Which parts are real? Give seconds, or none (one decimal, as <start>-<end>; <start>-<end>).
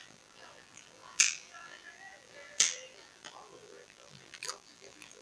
none